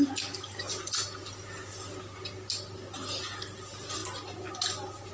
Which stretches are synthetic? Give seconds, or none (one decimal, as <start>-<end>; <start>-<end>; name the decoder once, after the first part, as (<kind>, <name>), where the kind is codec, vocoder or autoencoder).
0.0-1.2 (vocoder, BigVGAN v2); 3.2-4.0